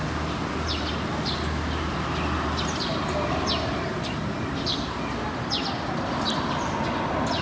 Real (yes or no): yes